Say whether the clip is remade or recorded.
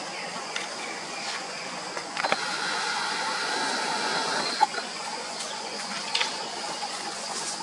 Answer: remade